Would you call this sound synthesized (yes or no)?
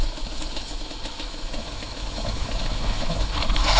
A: yes